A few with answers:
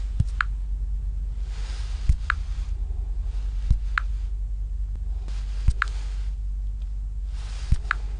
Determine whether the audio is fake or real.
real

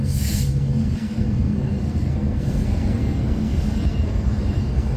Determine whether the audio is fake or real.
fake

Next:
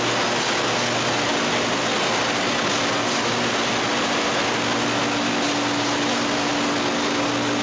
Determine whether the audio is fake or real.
real